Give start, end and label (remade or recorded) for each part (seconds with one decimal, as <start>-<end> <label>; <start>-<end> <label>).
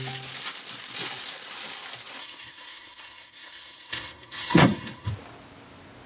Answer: 0.0-2.2 recorded; 2.2-5.1 remade; 5.1-6.1 recorded